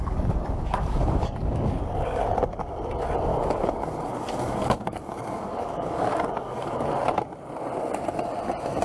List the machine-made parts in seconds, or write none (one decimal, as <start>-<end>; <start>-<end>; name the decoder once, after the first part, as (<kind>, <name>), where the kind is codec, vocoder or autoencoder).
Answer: 0.0-2.2 (codec, DAC); 3.3-6.9